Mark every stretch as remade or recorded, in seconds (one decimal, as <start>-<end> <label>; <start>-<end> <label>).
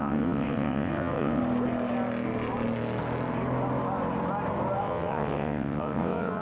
0.0-1.4 remade; 1.4-4.8 recorded; 4.8-6.4 remade